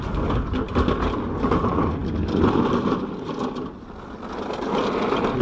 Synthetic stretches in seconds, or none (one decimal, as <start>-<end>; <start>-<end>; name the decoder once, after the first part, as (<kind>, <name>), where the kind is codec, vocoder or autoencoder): none